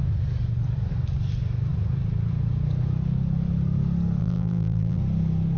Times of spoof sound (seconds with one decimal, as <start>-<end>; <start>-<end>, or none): 4.2-5.0

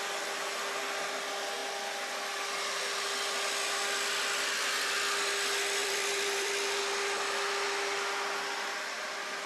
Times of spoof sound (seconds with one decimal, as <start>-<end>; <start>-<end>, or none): 5.8-6.8

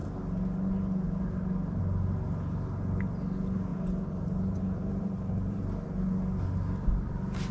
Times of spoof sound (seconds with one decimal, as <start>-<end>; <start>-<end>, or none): 3.7-5.6

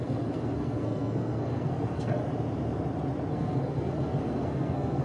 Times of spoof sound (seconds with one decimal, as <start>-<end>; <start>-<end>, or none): 0.0-2.2; 3.3-5.0

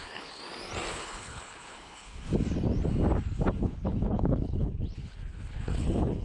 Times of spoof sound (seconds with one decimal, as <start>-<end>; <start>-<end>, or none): 0.0-0.4; 0.9-2.3; 3.6-6.2

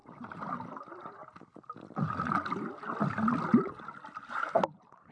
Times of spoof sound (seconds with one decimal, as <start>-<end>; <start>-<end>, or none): none

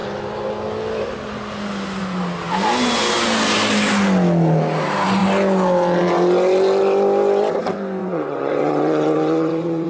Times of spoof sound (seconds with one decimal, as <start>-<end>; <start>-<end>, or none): 8.0-9.9

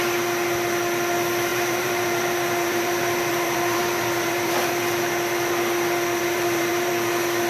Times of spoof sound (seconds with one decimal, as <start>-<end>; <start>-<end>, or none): 1.5-4.7; 6.2-6.9